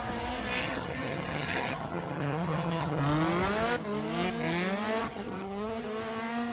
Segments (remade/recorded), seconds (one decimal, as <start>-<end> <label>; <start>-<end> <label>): 0.0-0.6 recorded; 0.6-3.0 remade; 3.0-5.0 recorded; 5.0-5.8 remade; 5.8-6.5 recorded